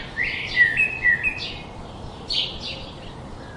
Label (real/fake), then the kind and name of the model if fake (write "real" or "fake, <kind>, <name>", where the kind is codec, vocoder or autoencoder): real